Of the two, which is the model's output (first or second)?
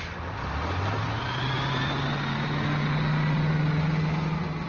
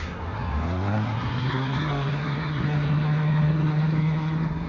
second